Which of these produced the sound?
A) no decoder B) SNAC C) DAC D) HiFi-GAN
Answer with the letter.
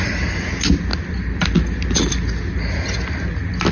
A